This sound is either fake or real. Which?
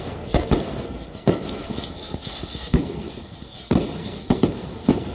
fake